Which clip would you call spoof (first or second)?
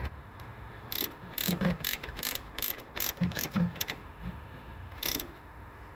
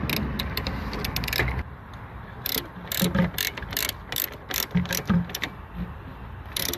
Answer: first